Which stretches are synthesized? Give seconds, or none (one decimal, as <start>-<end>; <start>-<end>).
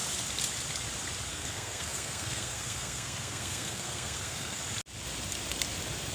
1.3-4.6